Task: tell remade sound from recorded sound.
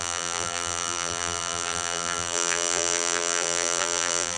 remade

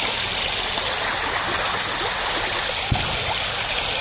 recorded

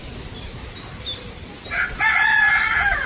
recorded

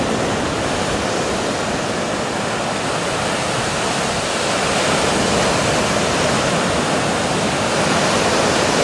recorded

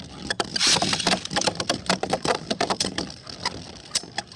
recorded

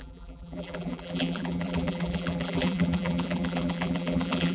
remade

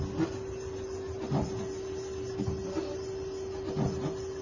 recorded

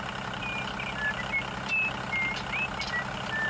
recorded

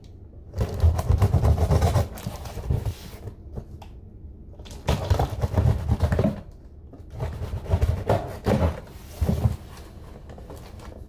recorded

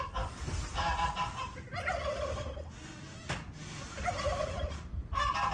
recorded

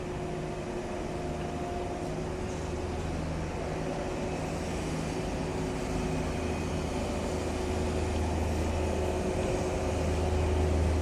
recorded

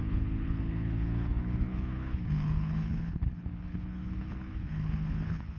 remade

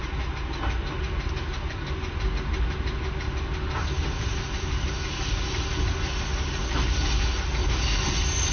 recorded